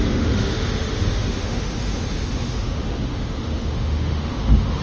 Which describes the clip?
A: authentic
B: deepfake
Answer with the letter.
B